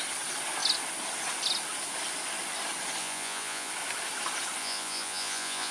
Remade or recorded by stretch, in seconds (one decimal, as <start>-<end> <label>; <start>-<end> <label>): 0.0-3.0 recorded; 3.0-3.7 remade; 3.7-4.6 recorded; 4.6-5.7 remade